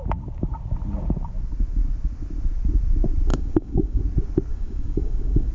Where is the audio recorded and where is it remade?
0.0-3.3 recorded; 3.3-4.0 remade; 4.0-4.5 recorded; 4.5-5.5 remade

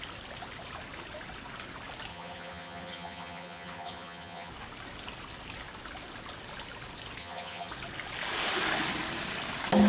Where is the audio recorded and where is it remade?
0.0-2.1 recorded; 2.1-4.5 remade; 4.5-7.2 recorded; 7.2-7.7 remade; 7.7-9.9 recorded

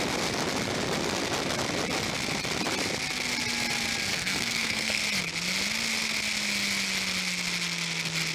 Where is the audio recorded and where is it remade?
0.0-4.1 recorded; 4.1-5.0 remade; 5.0-8.3 recorded

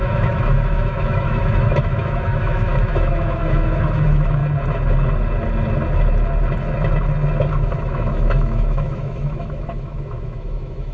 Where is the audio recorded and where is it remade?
0.0-4.4 remade; 4.4-7.5 recorded; 7.5-10.9 remade

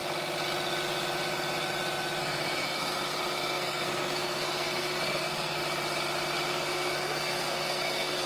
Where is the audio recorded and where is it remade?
0.0-2.2 recorded; 2.2-5.6 remade; 5.6-6.5 recorded; 6.5-8.3 remade